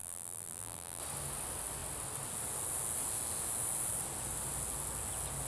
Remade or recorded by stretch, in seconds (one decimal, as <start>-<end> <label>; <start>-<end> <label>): 0.0-1.0 remade; 1.0-5.5 recorded

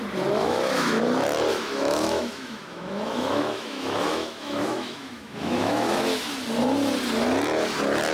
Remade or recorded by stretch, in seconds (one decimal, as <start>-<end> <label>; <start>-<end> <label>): 0.0-0.4 recorded; 0.4-1.0 remade; 1.0-1.5 recorded; 1.5-6.3 remade; 6.3-8.1 recorded

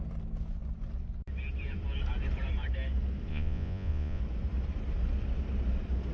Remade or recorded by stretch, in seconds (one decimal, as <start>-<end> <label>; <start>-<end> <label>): 0.0-3.3 recorded; 3.3-4.2 remade; 4.2-6.1 recorded

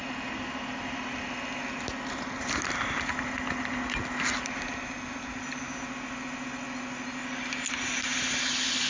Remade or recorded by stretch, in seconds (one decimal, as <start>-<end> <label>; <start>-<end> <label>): 0.0-8.9 recorded

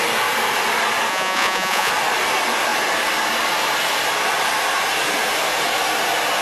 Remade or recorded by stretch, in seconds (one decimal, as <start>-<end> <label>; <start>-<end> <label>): 0.0-1.1 recorded; 1.1-1.9 remade; 1.9-6.4 recorded

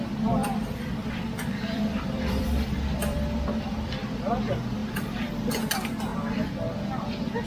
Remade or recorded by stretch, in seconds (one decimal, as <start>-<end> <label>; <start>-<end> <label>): 0.0-0.4 recorded; 0.4-4.2 remade; 4.2-4.8 recorded; 4.8-5.5 remade; 5.5-7.5 recorded